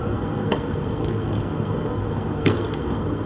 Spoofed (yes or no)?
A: yes